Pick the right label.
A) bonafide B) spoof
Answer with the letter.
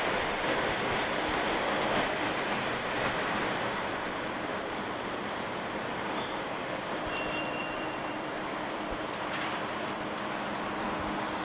B